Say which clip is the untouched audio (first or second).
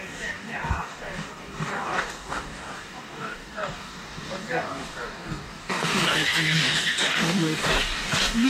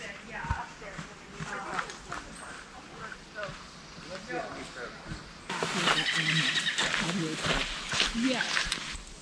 second